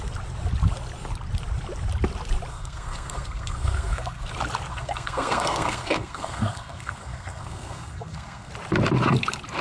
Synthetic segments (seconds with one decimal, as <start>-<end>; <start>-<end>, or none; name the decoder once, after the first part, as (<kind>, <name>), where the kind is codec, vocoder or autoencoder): 2.5-4.3 (codec, SNAC); 4.7-8.5